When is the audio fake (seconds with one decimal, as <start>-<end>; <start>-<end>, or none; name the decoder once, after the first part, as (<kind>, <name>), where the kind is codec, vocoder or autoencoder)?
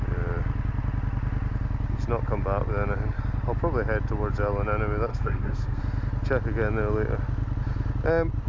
5.1-5.8 (codec, SNAC)